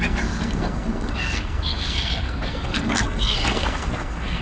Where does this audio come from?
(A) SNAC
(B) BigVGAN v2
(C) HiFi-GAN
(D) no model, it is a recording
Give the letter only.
A